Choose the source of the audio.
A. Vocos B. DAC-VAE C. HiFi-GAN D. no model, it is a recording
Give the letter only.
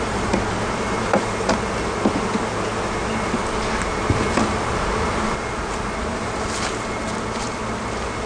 D